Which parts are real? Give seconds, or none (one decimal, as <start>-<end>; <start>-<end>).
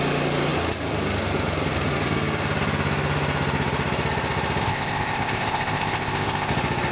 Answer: 0.0-4.6; 6.5-6.9